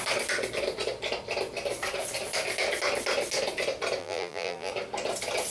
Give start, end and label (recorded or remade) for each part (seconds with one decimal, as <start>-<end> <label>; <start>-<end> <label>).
0.0-4.0 recorded; 4.0-4.7 remade; 4.7-5.5 recorded